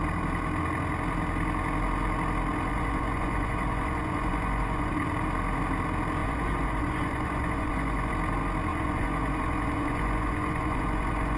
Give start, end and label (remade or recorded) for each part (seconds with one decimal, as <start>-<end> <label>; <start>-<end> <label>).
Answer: 0.0-2.7 recorded; 2.7-4.9 remade; 4.9-6.2 recorded; 6.2-8.1 remade; 8.1-8.7 recorded; 8.7-11.4 remade